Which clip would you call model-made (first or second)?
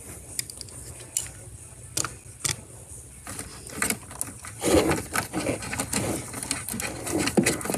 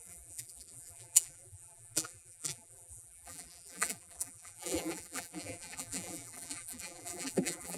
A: second